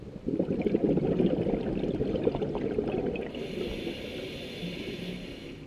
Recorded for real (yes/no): yes